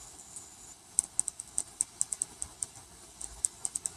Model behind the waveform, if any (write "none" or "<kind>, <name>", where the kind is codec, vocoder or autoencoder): none